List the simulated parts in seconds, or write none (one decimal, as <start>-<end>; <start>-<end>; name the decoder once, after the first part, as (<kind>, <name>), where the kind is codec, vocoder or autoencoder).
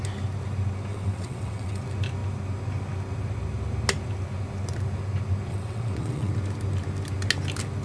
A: 0.9-1.8 (vocoder, WaveNeXt); 5.5-6.3